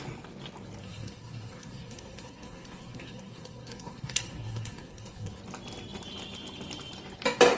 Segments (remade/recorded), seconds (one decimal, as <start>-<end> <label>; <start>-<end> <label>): 0.0-0.8 recorded; 0.8-5.4 remade; 5.4-7.6 recorded